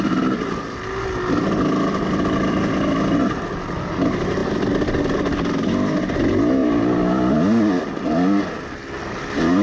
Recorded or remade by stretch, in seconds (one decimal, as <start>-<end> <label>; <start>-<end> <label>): 0.0-9.6 recorded